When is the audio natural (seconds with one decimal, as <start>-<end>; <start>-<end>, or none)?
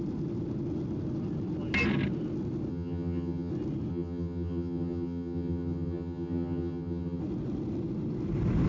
0.0-2.7; 3.5-3.9; 7.2-8.7